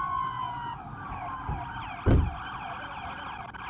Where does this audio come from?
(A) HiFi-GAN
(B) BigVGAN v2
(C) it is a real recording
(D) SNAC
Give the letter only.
C